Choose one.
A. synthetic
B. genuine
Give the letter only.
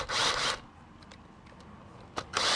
B